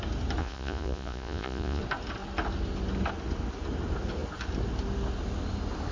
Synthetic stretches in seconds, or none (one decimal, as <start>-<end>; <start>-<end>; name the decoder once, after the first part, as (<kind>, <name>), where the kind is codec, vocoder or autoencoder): 0.4-1.8 (vocoder, Vocos)